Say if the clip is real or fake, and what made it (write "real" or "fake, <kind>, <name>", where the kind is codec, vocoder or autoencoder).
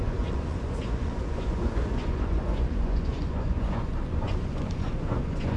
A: fake, vocoder, Vocos